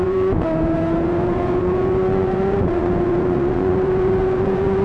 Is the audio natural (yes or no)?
no